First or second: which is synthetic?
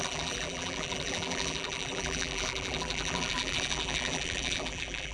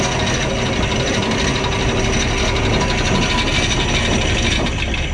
first